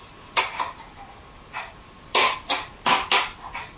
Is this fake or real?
real